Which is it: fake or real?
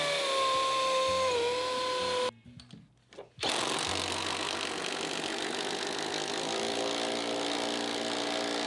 real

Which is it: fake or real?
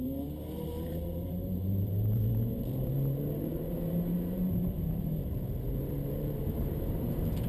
fake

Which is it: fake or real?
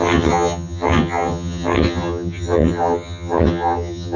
fake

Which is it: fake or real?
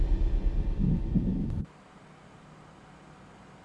real